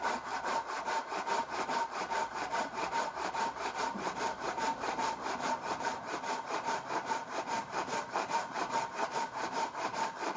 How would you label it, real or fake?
fake